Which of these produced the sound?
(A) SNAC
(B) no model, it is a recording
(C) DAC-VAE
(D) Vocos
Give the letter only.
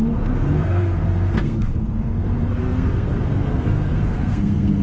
A